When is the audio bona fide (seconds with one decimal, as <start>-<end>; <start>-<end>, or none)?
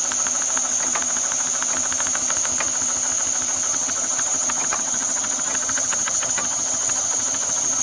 0.0-3.7